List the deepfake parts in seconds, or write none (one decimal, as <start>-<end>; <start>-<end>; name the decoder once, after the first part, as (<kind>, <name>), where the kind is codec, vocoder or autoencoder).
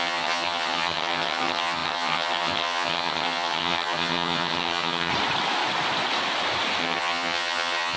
0.0-5.1 (vocoder, HiFi-GAN); 6.8-8.0